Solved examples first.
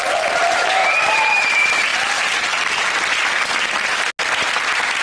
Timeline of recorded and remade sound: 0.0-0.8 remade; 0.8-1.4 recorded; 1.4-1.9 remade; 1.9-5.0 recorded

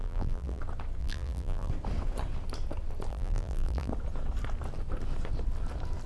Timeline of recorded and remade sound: 0.0-0.6 remade; 0.6-1.0 recorded; 1.0-1.7 remade; 1.7-3.1 recorded; 3.1-3.9 remade; 3.9-6.1 recorded

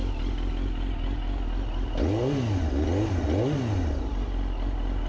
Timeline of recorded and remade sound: 0.0-5.1 recorded

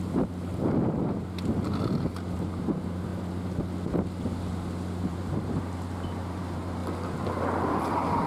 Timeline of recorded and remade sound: 0.0-0.5 remade; 0.5-2.3 recorded; 2.3-3.1 remade; 3.1-5.0 recorded; 5.0-6.8 remade; 6.8-7.7 recorded; 7.7-8.3 remade